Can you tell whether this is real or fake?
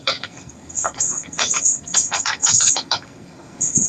fake